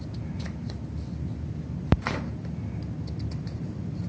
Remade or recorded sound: recorded